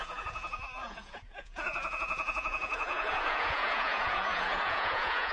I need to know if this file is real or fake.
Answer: fake